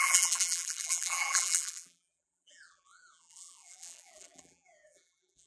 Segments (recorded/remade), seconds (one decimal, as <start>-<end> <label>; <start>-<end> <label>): 0.0-5.5 remade

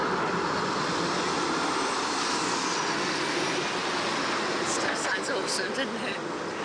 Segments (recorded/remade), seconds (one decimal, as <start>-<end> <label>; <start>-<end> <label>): 0.0-6.6 recorded

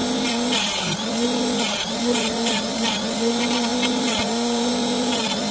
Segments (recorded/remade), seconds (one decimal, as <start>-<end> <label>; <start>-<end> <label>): 0.0-1.8 recorded; 1.8-5.5 remade

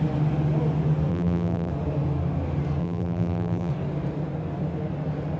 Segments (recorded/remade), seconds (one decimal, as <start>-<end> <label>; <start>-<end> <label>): 0.0-1.1 recorded; 1.1-1.7 remade; 1.7-2.8 recorded; 2.8-3.7 remade; 3.7-5.4 recorded

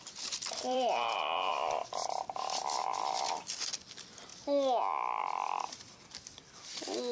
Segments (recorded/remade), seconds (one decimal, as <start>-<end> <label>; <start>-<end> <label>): 0.0-4.3 remade; 4.3-5.2 recorded; 5.2-7.1 remade

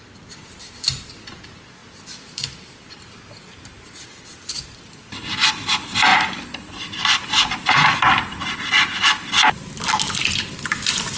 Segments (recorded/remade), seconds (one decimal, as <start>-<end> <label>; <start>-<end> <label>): 0.0-1.8 recorded; 1.8-5.6 remade; 5.6-6.1 recorded; 6.1-7.3 remade; 7.3-11.2 recorded